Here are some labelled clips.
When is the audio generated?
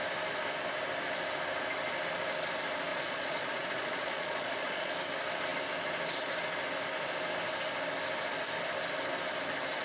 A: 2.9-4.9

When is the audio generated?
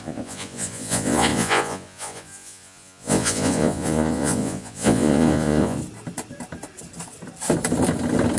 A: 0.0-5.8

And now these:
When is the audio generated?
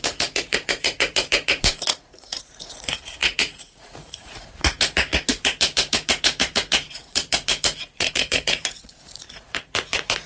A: 0.0-10.3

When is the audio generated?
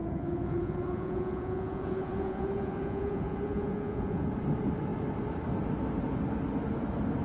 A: 0.0-4.3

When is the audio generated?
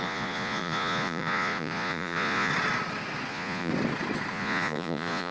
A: 0.0-2.5; 3.3-3.7; 4.3-5.3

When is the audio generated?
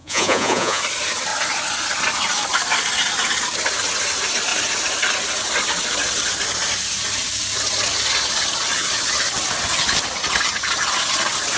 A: 0.0-0.8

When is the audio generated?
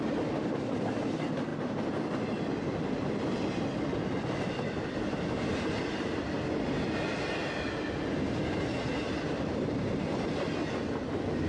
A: none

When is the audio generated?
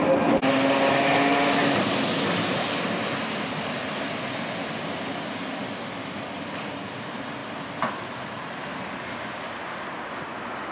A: none